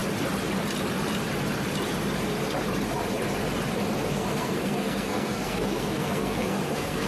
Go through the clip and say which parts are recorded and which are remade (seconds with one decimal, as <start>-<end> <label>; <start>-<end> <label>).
0.0-4.1 recorded; 4.1-7.1 remade